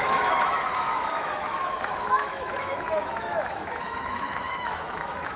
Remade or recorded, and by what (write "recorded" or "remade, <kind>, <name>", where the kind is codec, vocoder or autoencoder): remade, autoencoder, DAC-VAE